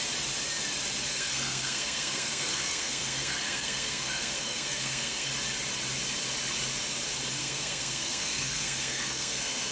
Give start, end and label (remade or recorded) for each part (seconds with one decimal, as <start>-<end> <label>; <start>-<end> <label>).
0.0-1.1 recorded; 1.1-5.3 remade; 5.3-7.4 recorded; 7.4-9.7 remade